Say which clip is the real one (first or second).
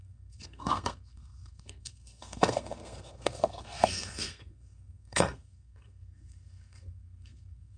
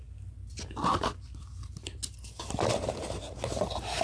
second